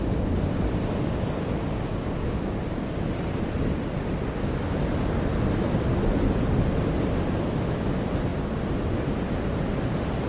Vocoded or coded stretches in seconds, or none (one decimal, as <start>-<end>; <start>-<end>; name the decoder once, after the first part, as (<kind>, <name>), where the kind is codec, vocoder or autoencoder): 1.9-2.6 (codec, DAC)